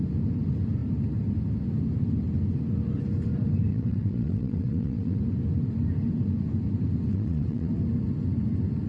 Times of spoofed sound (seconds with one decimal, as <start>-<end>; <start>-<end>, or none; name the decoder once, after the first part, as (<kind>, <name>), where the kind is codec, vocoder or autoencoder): 3.7-5.2 (vocoder, WaveNeXt); 7.1-7.7

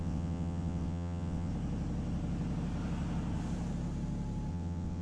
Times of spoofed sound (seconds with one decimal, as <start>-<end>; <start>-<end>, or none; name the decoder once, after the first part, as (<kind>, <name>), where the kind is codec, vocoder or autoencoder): 0.0-1.5 (vocoder, WaveNeXt); 4.5-5.0